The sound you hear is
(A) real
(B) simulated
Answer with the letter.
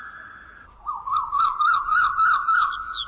A